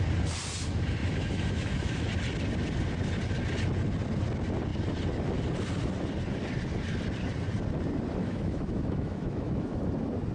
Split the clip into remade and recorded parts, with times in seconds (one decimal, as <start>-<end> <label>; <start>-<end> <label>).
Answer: 0.0-1.0 recorded; 1.0-2.0 remade; 2.0-8.2 recorded; 8.2-9.8 remade; 9.8-10.3 recorded